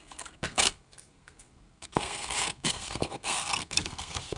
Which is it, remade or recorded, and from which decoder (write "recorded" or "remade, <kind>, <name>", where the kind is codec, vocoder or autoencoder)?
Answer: remade, codec, SNAC